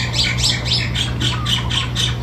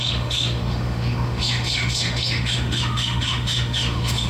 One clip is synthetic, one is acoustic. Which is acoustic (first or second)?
first